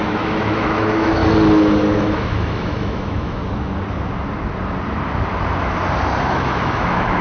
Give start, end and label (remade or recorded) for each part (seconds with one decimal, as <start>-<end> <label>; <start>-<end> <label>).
0.0-1.2 remade; 1.2-2.0 recorded; 2.0-3.4 remade; 3.4-6.2 recorded; 6.2-7.2 remade